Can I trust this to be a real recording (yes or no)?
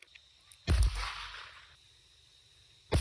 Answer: yes